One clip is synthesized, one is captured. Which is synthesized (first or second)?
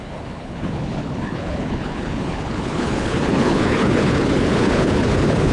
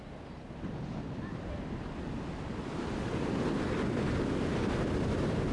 first